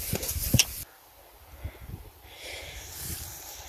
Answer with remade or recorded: remade